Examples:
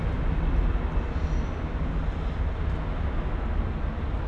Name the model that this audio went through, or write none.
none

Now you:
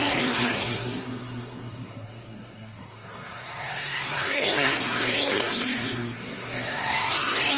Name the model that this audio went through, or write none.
codec, SNAC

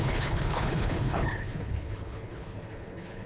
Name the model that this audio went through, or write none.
codec, HILCodec